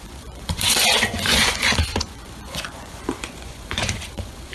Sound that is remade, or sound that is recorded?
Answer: remade